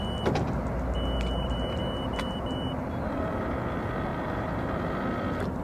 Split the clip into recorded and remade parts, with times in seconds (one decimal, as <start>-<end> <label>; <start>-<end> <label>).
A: 0.0-4.1 recorded; 4.1-5.6 remade